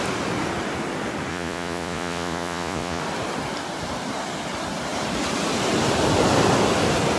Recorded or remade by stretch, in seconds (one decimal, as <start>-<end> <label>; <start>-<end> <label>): 0.0-1.3 recorded; 1.3-3.0 remade; 3.0-7.2 recorded